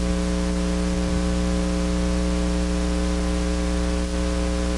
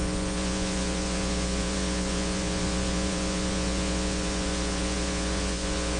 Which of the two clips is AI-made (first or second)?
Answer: second